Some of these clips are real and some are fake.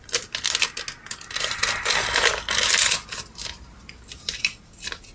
real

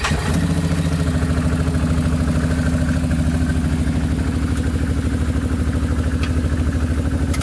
real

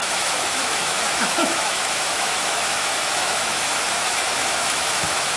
fake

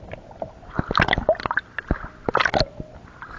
real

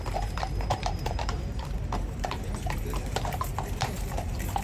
fake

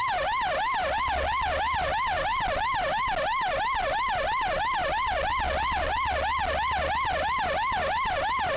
real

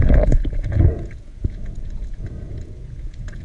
fake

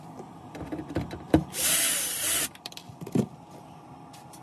fake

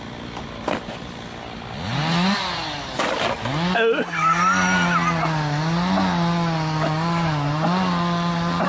real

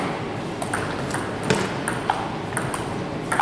real